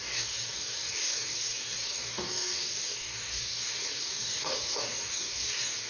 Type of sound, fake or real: fake